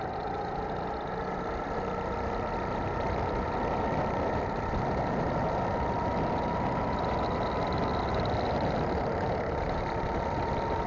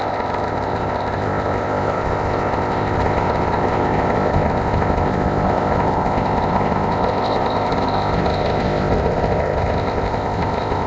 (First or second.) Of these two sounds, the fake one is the second